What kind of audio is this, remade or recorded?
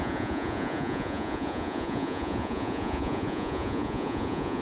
remade